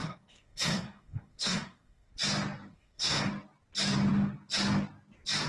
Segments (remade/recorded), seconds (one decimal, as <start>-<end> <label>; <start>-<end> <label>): 0.0-2.1 remade; 2.1-2.7 recorded; 2.7-3.3 remade; 3.3-5.5 recorded